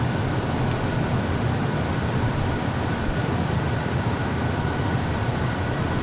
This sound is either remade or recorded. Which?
recorded